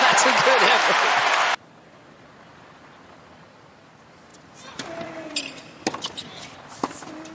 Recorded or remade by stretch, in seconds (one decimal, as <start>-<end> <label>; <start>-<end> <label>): 0.0-7.3 recorded